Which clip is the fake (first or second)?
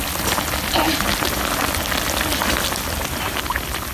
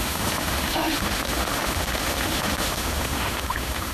second